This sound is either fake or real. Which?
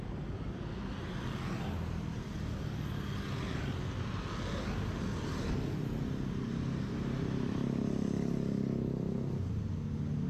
real